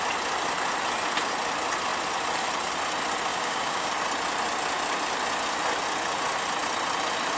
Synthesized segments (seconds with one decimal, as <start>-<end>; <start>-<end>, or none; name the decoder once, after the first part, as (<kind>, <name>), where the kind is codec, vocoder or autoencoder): 3.3-3.9 (codec, DAC)